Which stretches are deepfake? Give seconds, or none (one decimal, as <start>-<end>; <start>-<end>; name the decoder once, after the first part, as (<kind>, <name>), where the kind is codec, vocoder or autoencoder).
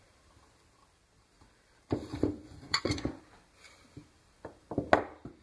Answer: 2.1-3.2 (vocoder, Vocos)